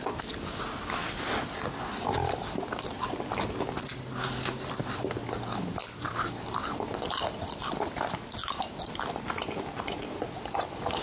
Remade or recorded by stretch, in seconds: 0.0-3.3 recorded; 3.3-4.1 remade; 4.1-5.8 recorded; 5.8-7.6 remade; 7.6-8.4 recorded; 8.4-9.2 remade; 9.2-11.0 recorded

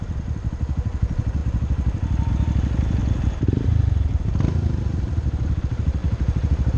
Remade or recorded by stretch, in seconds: 0.0-1.4 recorded; 1.4-2.3 remade; 2.3-3.0 recorded; 3.0-5.6 remade; 5.6-6.8 recorded

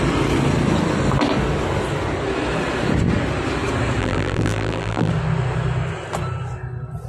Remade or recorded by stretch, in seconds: 0.0-4.0 recorded; 4.0-5.1 remade; 5.1-7.1 recorded

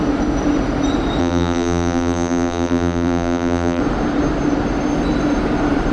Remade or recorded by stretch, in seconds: 0.0-1.2 recorded; 1.2-3.8 remade; 3.8-5.9 recorded

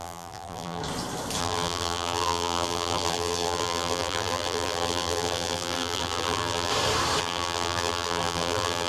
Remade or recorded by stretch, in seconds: 0.0-0.8 remade; 0.8-1.4 recorded; 1.4-6.7 remade; 6.7-7.2 recorded; 7.2-8.9 remade

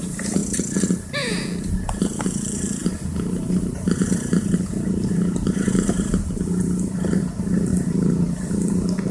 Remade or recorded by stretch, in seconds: 0.0-0.4 remade; 0.4-1.7 recorded; 1.7-7.7 remade; 7.7-9.1 recorded